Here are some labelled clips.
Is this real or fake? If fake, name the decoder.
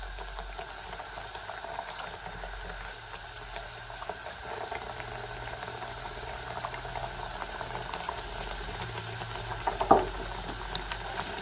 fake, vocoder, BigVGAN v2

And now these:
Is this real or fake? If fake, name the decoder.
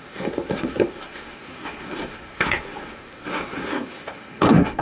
fake, codec, SNAC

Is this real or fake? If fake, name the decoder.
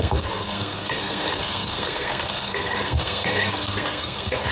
fake, codec, SNAC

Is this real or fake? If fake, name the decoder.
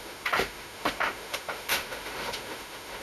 fake, autoencoder, DAC-VAE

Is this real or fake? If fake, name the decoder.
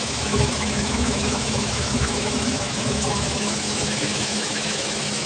fake, autoencoder, DAC-VAE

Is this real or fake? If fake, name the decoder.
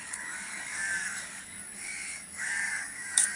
fake, codec, DAC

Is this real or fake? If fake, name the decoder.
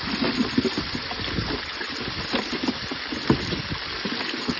real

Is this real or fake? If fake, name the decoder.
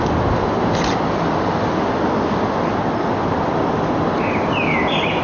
real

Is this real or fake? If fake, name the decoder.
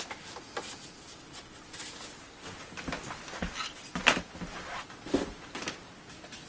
real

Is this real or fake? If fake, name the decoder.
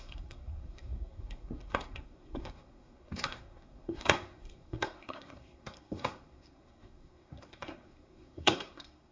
fake, codec, SNAC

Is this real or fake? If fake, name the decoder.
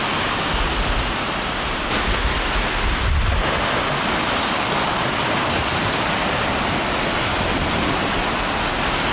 real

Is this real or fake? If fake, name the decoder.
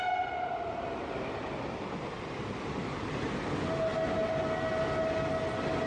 real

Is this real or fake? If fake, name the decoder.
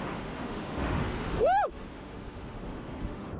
fake, autoencoder, DAC-VAE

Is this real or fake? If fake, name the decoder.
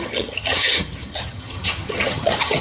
fake, vocoder, HiFi-GAN